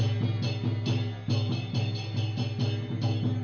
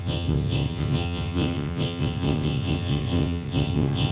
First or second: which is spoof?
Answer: second